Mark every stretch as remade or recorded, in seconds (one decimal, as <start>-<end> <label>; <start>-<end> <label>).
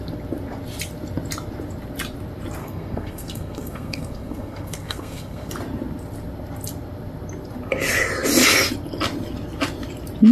0.0-2.6 recorded; 2.6-5.5 remade; 5.5-10.3 recorded